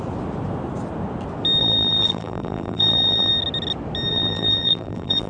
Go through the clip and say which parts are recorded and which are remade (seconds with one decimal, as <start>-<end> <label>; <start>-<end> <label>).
0.0-1.6 recorded; 1.6-3.3 remade; 3.3-4.1 recorded; 4.1-5.3 remade